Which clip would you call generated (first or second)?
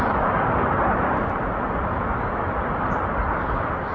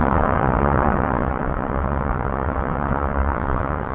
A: second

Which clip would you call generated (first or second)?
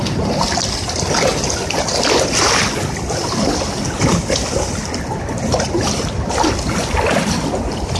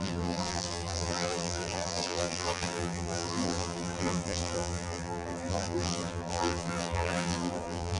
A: second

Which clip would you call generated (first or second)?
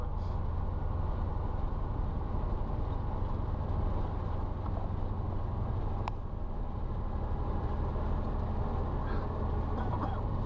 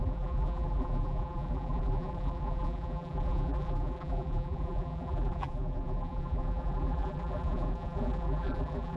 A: second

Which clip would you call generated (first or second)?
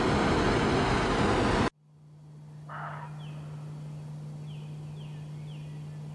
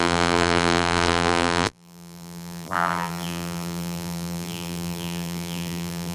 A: second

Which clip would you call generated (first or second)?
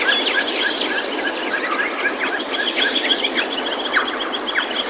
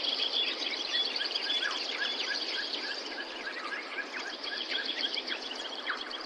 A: second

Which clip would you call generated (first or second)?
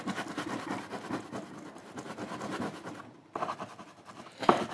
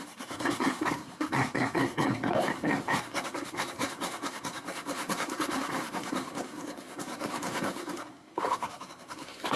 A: second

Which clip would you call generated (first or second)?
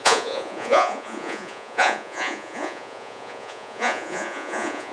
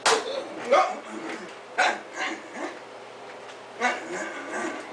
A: first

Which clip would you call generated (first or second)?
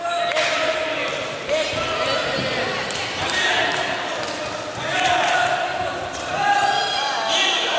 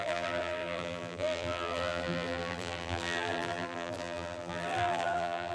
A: second